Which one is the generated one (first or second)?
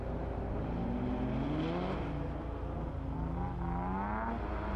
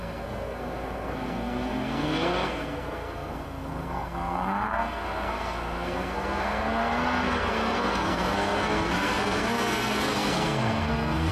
second